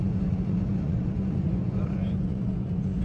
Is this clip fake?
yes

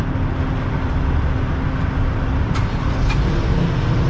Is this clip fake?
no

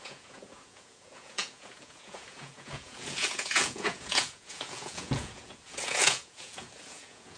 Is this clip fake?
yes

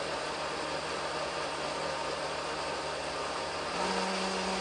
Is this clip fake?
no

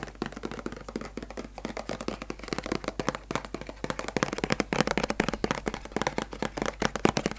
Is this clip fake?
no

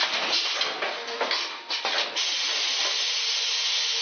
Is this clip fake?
no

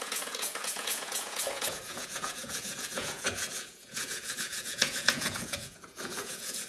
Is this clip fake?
yes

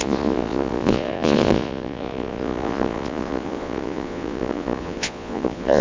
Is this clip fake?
yes